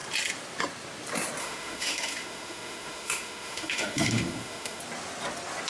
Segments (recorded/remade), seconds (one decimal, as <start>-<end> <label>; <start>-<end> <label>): 0.0-1.4 recorded; 1.4-4.8 remade; 4.8-5.7 recorded